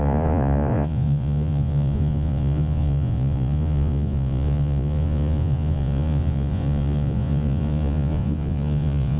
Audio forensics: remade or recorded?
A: remade